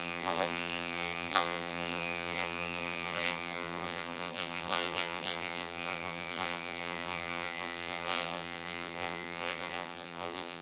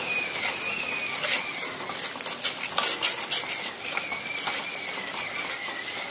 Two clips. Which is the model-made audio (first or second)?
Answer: first